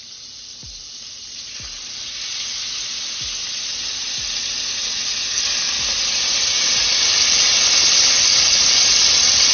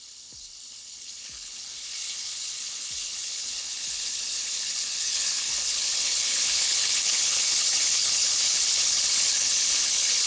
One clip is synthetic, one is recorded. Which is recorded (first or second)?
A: first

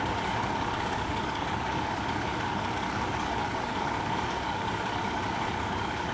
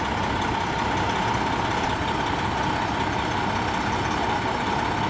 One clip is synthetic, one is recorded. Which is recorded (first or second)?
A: second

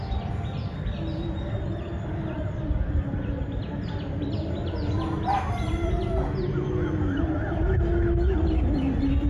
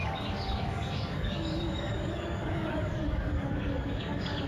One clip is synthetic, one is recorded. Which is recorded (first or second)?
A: first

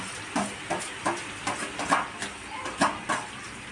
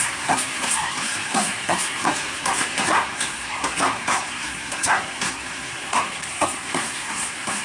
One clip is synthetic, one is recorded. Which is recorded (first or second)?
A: first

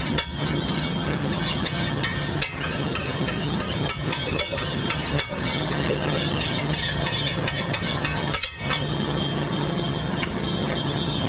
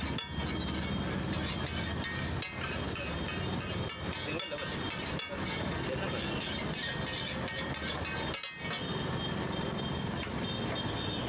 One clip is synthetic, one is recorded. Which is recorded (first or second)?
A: second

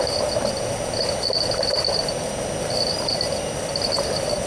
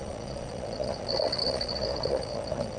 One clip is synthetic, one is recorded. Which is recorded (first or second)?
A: first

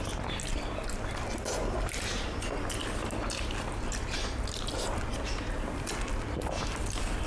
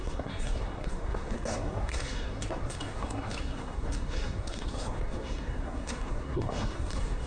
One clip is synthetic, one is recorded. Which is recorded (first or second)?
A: first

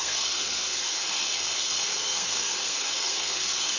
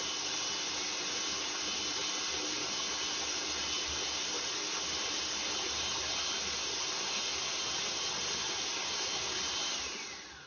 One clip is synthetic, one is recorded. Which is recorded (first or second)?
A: second